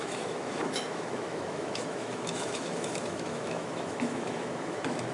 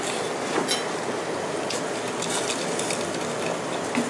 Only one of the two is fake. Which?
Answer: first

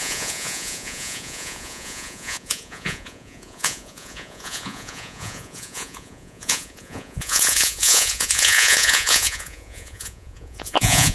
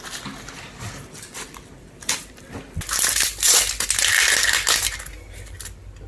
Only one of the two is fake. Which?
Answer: first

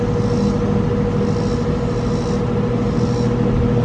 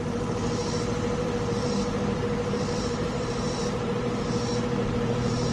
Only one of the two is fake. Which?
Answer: second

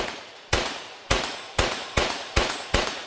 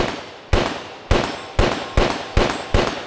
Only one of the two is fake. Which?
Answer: first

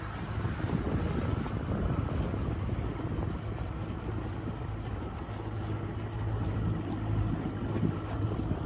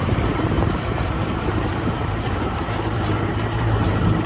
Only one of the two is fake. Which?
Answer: second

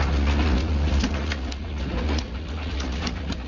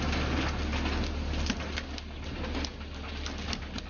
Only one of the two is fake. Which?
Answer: first